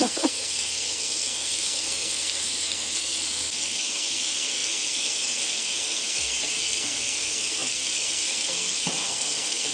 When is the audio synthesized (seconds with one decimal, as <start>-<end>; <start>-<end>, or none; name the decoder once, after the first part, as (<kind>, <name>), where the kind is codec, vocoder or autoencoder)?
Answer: 0.0-9.7 (codec, SNAC)